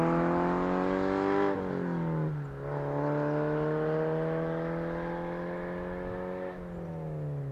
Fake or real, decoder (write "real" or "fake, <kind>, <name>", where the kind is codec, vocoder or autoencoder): real